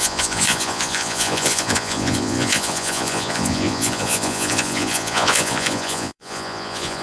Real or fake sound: fake